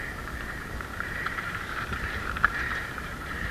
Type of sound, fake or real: fake